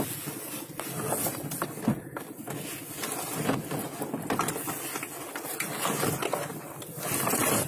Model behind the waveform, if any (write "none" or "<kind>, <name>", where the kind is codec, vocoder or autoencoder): none